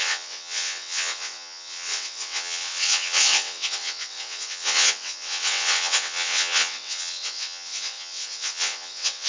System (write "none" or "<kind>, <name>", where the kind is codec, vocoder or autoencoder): vocoder, WaveNeXt